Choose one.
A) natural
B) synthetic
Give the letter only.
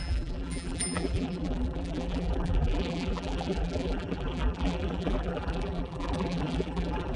B